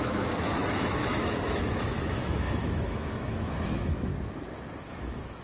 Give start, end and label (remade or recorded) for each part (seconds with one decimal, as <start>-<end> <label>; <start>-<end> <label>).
0.0-4.1 remade; 4.1-4.9 recorded; 4.9-5.4 remade